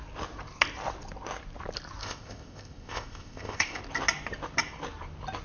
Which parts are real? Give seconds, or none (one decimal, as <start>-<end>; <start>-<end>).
0.0-2.0; 3.8-5.4